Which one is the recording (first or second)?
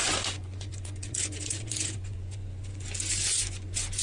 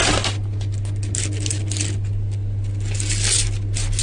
second